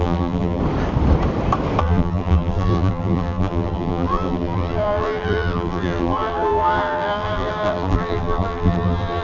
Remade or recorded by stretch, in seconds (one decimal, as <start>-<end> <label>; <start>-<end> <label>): 0.0-0.6 remade; 0.6-1.8 recorded; 1.8-9.2 remade